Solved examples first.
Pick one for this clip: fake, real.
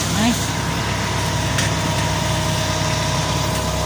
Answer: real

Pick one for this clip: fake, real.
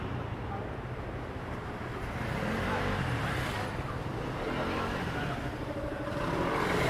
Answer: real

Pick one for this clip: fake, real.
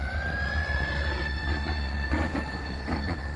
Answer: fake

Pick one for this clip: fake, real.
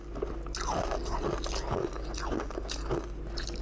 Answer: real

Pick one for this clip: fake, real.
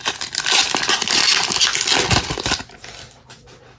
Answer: real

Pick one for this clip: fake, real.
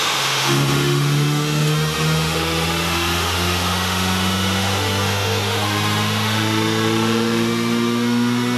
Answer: fake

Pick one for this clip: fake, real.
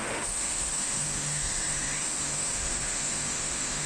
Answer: fake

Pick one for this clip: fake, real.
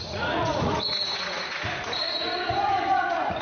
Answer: fake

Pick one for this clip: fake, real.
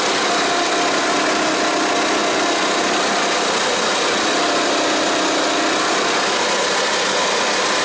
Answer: real